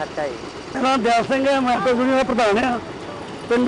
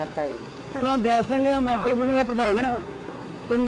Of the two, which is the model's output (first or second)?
second